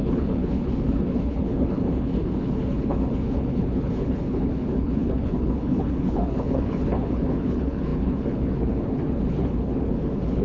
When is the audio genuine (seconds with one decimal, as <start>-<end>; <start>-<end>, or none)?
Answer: none